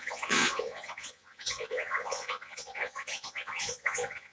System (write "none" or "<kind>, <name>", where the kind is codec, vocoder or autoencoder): vocoder, Vocos